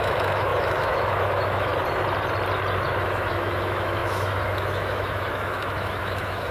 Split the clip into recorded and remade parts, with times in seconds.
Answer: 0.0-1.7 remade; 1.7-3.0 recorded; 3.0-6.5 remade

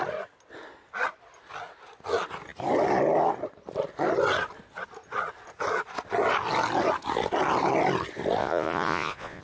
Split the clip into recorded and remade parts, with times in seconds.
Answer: 0.0-8.4 recorded; 8.4-9.4 remade

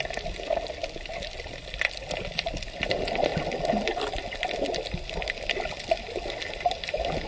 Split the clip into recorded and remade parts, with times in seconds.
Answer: 0.0-7.3 recorded

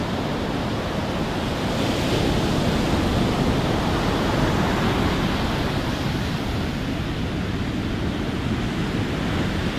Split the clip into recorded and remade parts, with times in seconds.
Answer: 0.0-9.8 recorded

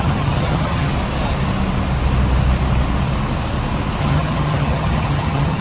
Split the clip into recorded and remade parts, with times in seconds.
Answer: 0.0-0.9 remade; 0.9-4.0 recorded; 4.0-5.6 remade

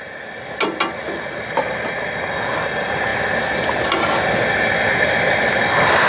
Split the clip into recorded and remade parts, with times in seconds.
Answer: 0.0-6.1 recorded